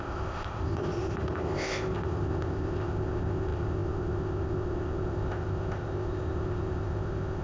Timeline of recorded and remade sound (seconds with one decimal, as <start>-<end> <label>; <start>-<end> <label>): 0.0-7.4 remade